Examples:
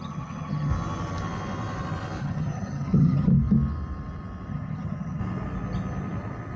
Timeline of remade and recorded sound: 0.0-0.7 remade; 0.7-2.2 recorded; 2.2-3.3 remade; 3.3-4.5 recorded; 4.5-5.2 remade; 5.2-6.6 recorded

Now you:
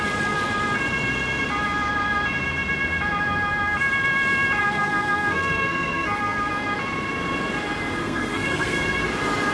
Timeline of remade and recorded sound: 0.0-4.6 recorded; 4.6-6.5 remade; 6.5-8.0 recorded; 8.0-9.0 remade; 9.0-9.5 recorded

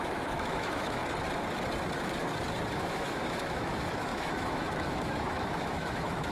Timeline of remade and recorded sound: 0.0-1.0 remade; 1.0-2.7 recorded; 2.7-6.3 remade

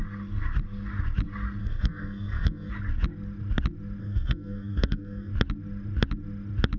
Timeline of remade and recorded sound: 0.0-1.6 recorded; 1.6-2.7 remade; 2.7-4.0 recorded; 4.0-5.3 remade; 5.3-6.8 recorded

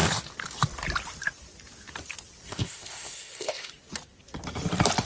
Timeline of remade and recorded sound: 0.0-2.5 recorded; 2.5-3.7 remade; 3.7-5.1 recorded